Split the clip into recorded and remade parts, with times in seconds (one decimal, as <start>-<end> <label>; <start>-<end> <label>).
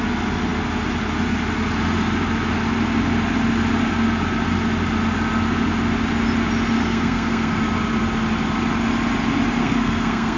0.0-6.8 recorded; 6.8-7.6 remade; 7.6-9.6 recorded; 9.6-10.4 remade